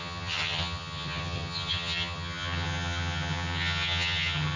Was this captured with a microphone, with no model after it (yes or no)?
no